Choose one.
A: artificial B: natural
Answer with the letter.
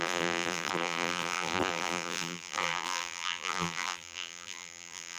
A